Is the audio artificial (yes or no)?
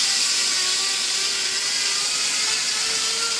no